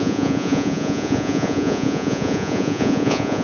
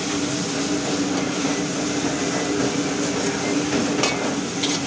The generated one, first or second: first